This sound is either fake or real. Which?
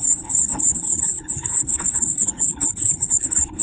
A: fake